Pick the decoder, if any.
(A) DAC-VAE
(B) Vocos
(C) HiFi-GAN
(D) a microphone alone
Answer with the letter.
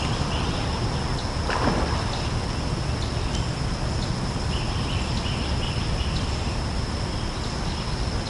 D